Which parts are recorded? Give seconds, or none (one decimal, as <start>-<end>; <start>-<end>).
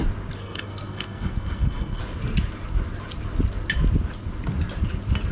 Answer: 0.0-0.4; 2.0-5.3